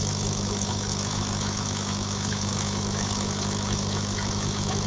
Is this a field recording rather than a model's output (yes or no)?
no